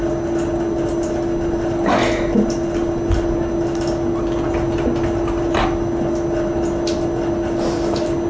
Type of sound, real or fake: real